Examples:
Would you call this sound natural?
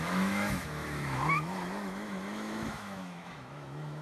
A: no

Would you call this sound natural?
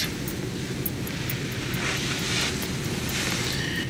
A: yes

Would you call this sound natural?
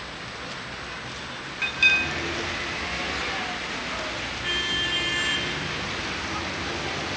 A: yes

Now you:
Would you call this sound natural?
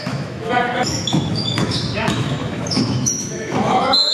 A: no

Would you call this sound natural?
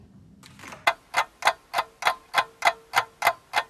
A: yes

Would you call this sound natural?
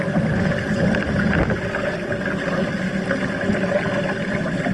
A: yes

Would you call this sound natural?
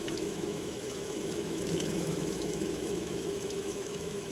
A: no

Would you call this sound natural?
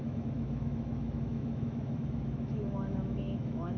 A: no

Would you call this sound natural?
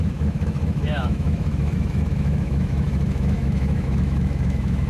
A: no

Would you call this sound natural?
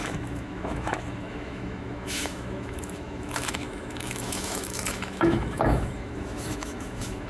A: no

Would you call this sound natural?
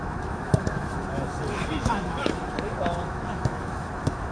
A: no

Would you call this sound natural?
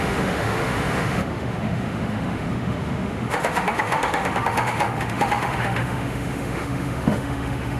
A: no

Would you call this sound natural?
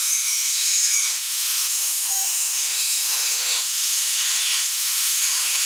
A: no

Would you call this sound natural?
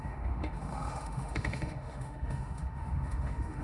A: no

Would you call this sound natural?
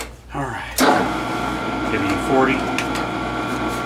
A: yes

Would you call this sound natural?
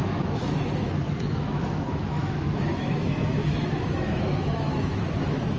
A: no